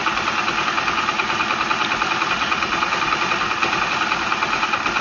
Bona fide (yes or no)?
yes